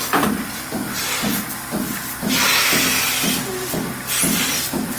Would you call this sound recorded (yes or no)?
yes